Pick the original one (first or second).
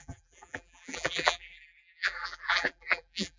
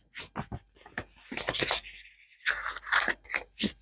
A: second